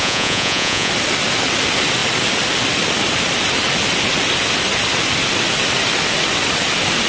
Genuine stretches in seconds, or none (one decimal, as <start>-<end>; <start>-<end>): 0.9-7.1